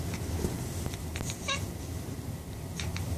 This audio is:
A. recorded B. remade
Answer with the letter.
A